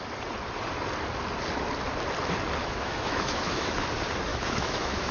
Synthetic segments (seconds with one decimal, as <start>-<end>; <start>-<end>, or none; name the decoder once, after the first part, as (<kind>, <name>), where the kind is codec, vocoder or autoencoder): 2.6-3.9 (autoencoder, DAC-VAE); 4.3-5.1